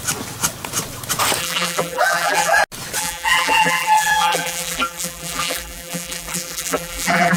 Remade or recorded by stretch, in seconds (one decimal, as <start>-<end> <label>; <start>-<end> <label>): 0.0-1.4 recorded; 1.4-2.6 remade; 2.6-3.0 recorded; 3.0-7.4 remade